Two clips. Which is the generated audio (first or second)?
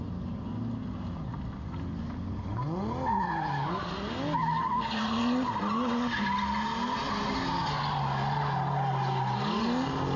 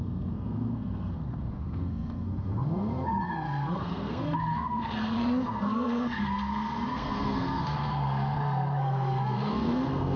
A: second